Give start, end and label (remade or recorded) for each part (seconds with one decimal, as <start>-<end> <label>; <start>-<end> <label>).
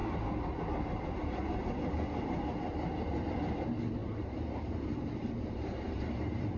0.0-4.0 recorded; 4.0-6.6 remade